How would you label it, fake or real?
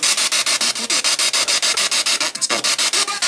real